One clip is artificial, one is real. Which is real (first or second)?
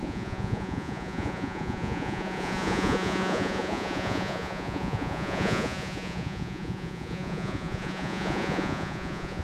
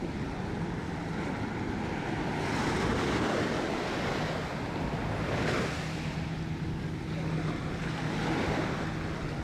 second